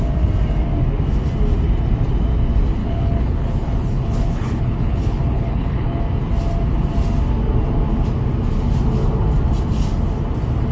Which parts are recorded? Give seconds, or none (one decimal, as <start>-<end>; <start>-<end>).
0.0-2.8; 6.0-10.7